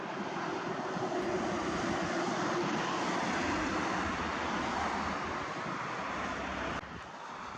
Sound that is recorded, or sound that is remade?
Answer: recorded